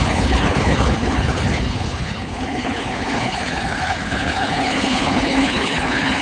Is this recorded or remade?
remade